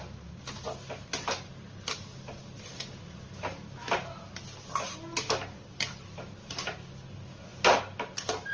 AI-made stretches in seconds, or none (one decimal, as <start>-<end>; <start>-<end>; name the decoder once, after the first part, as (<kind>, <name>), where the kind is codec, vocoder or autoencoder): none